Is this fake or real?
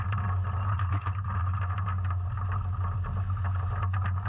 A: real